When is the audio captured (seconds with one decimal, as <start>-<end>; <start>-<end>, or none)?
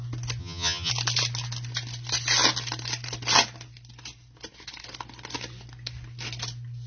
0.0-0.4; 0.9-6.9